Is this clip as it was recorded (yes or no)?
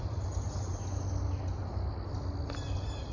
yes